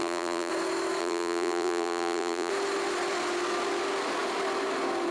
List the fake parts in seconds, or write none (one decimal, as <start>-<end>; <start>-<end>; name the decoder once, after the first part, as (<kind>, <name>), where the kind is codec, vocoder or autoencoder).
0.0-0.5 (vocoder, BigVGAN v2); 1.0-2.5

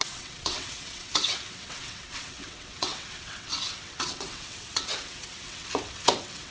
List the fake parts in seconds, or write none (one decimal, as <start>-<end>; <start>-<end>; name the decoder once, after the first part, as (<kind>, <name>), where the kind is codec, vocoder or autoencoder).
0.0-6.5 (vocoder, WaveNeXt)

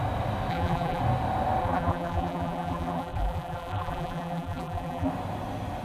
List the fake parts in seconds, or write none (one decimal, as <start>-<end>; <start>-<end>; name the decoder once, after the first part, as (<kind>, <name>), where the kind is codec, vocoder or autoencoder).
0.5-1.0 (vocoder, BigVGAN v2); 1.6-5.1

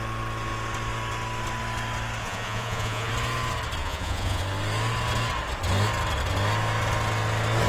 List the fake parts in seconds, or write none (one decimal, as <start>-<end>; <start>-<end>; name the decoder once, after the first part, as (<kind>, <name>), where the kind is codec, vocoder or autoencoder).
2.2-3.1 (vocoder, Vocos); 3.8-4.4